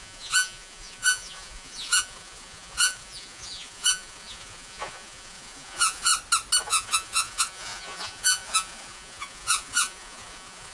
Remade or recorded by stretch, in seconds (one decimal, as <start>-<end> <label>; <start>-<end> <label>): 0.0-6.1 remade; 6.1-6.6 recorded; 6.6-10.7 remade